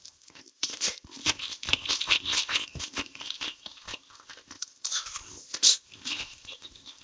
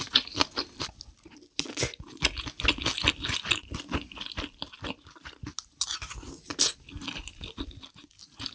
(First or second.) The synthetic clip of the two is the first